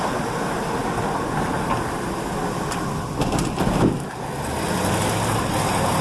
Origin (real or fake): real